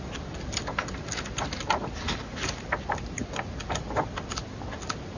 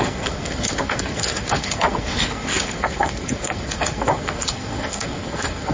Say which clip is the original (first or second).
first